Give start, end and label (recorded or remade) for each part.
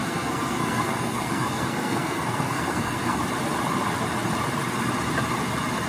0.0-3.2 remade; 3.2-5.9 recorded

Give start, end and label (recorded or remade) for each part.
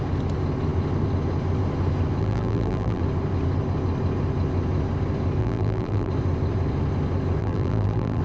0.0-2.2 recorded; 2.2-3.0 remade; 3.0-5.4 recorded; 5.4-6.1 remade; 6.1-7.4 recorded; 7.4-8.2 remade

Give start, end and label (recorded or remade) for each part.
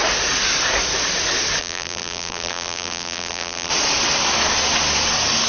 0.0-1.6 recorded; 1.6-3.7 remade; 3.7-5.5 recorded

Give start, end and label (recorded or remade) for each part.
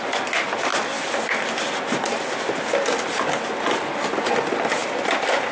0.0-5.5 recorded